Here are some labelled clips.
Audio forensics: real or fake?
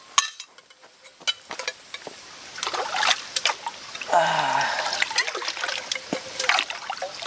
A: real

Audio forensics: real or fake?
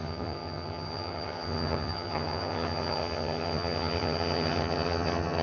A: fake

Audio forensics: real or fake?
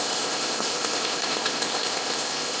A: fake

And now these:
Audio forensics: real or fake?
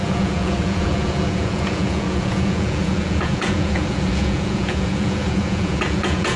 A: fake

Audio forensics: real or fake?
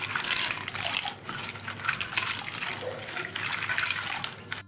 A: real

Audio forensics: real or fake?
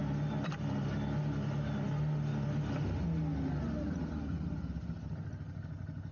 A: real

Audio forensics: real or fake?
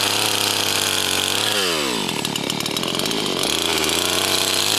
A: real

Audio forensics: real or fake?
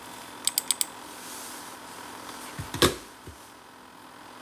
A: real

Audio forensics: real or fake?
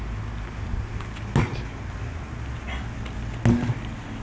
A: real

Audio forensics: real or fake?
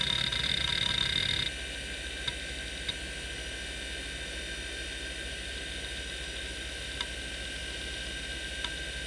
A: real